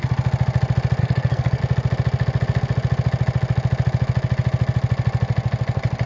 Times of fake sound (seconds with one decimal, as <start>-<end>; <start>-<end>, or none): 1.0-1.6